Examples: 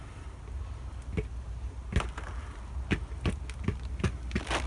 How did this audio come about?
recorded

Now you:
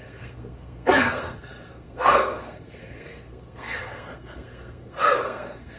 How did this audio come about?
remade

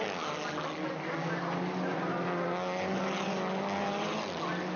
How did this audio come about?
recorded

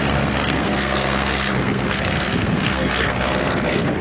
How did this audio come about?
remade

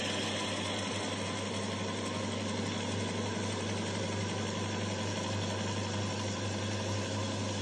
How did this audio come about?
recorded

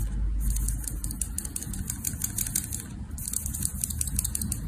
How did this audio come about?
recorded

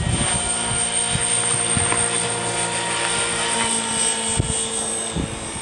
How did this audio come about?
recorded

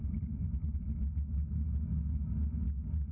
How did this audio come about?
recorded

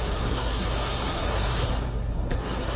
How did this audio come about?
remade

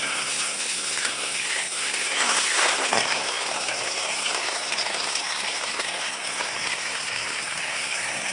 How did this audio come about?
remade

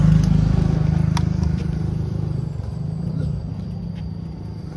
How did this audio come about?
recorded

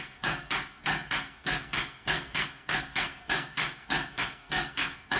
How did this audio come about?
remade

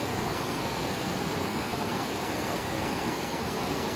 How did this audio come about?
remade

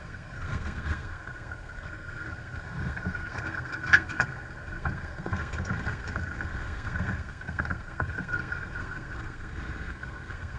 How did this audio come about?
remade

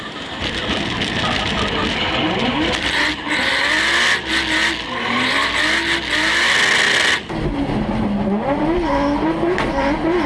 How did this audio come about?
recorded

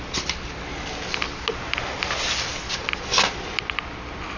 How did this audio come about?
recorded